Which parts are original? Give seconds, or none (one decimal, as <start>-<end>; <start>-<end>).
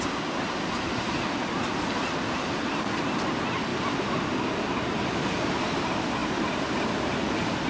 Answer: 0.0-7.7